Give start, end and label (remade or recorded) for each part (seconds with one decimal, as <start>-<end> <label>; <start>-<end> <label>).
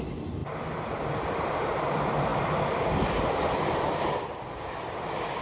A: 0.0-0.4 recorded; 0.4-1.1 remade; 1.1-2.3 recorded; 2.3-5.0 remade; 5.0-5.4 recorded